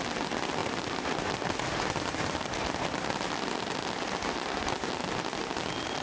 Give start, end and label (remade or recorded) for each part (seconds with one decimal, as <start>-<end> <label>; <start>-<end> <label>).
0.0-6.0 recorded